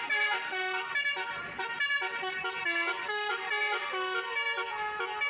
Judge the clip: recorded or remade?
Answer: recorded